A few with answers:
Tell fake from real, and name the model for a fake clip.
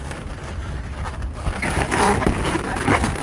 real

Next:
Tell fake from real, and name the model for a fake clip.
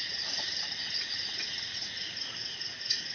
fake, vocoder, Vocos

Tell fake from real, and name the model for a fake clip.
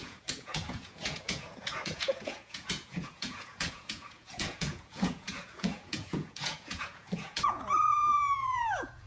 fake, vocoder, Vocos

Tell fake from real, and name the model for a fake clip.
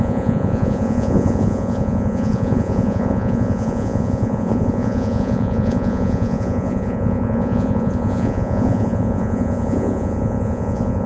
fake, vocoder, Vocos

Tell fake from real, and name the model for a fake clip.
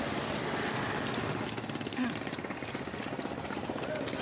real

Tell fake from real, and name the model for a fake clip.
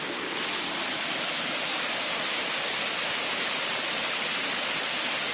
real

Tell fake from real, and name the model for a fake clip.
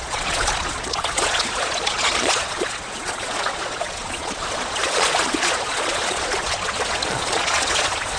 fake, vocoder, Vocos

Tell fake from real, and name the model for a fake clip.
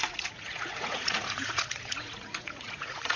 fake, vocoder, Vocos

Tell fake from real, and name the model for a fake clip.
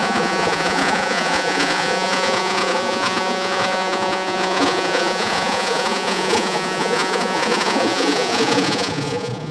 fake, vocoder, Vocos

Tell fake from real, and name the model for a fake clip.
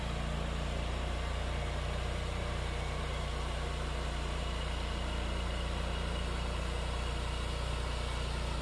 real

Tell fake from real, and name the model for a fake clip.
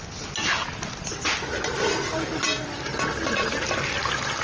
real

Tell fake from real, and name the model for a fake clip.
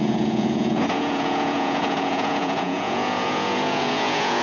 fake, vocoder, Vocos